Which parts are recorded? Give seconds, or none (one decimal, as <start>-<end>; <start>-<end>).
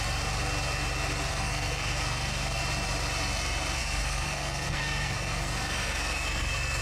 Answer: 0.0-1.3; 2.6-3.8